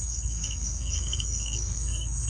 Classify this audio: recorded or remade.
remade